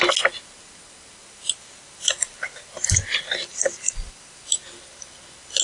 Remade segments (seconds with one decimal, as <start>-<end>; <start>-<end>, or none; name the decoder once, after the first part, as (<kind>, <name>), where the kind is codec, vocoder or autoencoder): 1.2-4.6 (vocoder, BigVGAN v2)